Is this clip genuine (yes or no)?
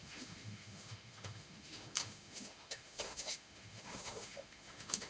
no